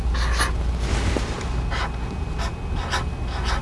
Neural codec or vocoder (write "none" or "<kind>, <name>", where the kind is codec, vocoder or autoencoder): none